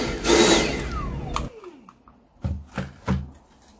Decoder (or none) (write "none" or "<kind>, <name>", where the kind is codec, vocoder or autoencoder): none